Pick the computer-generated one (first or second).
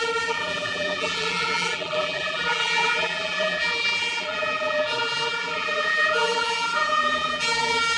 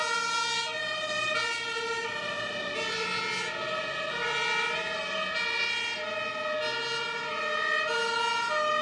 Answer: first